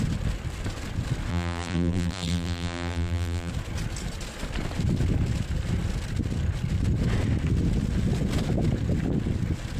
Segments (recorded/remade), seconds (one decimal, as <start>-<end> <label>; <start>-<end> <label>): 0.0-1.3 recorded; 1.3-3.5 remade; 3.5-9.8 recorded